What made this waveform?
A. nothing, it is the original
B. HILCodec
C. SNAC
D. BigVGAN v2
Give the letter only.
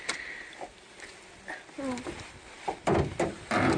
D